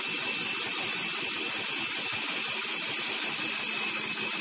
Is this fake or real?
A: real